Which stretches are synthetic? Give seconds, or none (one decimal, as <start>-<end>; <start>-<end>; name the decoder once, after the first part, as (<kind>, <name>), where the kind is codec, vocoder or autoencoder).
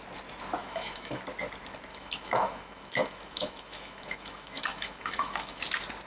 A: 0.6-1.2 (autoencoder, DAC-VAE); 1.9-5.6